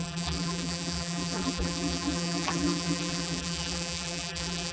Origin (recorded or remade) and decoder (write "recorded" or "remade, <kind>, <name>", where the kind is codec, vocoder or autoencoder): remade, vocoder, BigVGAN v2